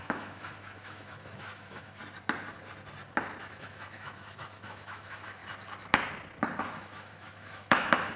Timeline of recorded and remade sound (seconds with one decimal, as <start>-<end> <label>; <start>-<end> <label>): 0.0-2.0 remade; 2.0-3.4 recorded; 3.4-5.4 remade; 5.4-6.6 recorded; 6.6-8.2 remade